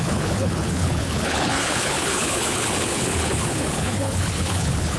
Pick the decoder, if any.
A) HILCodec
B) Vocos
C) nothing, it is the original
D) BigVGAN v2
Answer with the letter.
A